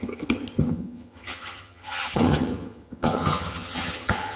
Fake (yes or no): yes